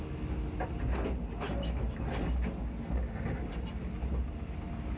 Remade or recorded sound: recorded